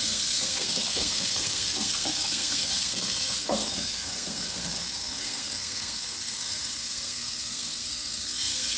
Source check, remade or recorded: remade